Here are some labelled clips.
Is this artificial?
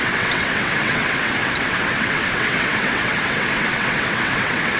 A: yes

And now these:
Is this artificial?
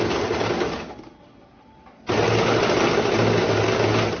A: no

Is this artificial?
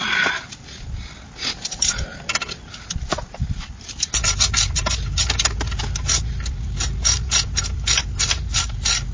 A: no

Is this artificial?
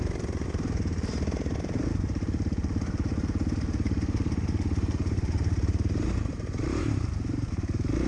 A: yes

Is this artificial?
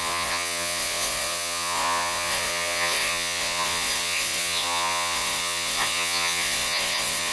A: yes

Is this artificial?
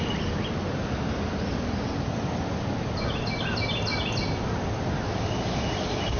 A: no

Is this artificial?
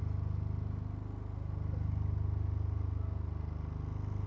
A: no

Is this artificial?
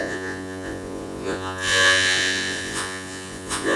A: yes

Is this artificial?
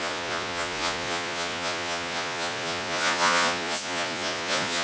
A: yes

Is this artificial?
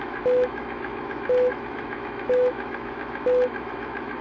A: yes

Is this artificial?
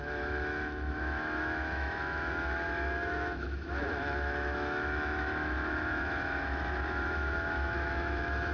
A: yes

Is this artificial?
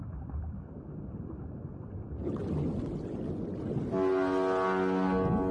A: no